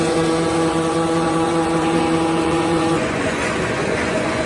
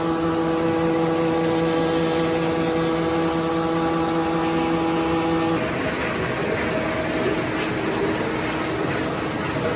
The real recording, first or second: second